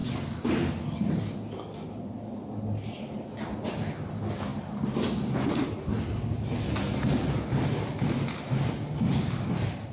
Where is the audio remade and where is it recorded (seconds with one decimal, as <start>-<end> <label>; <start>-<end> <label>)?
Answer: 0.0-9.9 recorded